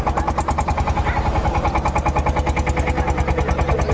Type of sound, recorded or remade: recorded